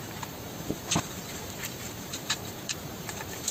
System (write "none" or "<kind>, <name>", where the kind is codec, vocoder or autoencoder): vocoder, BigVGAN v2